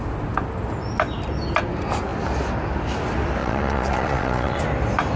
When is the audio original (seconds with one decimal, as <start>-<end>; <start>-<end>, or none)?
0.0-3.4; 4.6-5.2